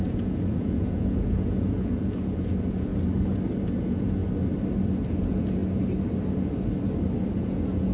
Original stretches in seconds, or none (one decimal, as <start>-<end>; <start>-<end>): 2.9-3.8; 4.2-5.1; 5.6-7.3

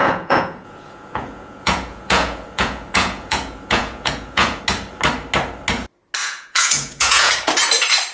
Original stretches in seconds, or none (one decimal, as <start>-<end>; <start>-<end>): 4.6-6.2; 7.3-8.1

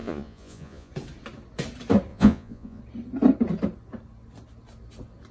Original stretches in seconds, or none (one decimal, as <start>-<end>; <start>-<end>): 0.9-2.1; 2.8-5.3

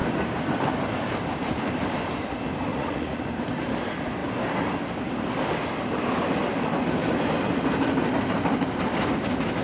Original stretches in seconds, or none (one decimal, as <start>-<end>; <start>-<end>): 0.0-2.7; 3.2-9.6

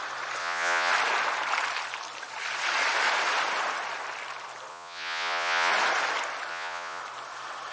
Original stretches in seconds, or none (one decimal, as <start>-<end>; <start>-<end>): 0.0-0.4; 0.9-4.7; 5.7-6.5; 7.0-7.7

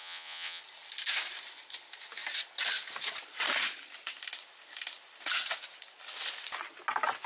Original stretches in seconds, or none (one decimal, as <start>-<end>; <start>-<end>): 0.6-7.3

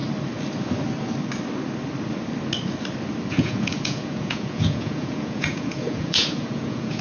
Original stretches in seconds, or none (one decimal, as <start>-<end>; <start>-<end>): 0.0-3.3

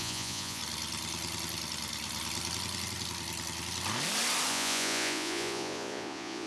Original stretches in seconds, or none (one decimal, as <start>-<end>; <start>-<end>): 0.6-4.5